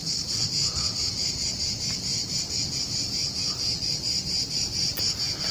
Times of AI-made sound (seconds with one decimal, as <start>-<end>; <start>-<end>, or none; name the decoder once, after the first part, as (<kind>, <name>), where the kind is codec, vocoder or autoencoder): 0.0-1.7 (vocoder, BigVGAN v2); 2.1-5.5